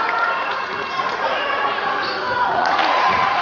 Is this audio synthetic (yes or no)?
yes